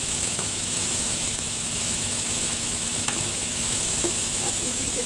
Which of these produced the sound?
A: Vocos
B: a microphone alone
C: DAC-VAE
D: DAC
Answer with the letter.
C